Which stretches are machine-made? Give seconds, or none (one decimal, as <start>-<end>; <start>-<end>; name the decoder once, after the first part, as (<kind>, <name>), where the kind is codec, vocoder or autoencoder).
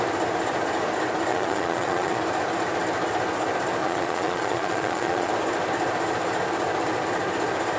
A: 1.3-2.2 (vocoder, Vocos); 3.8-5.3